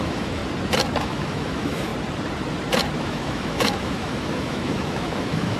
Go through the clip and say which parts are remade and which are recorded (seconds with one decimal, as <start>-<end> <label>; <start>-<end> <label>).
0.0-0.4 remade; 0.4-1.0 recorded; 1.0-1.9 remade; 1.9-3.0 recorded; 3.0-5.6 remade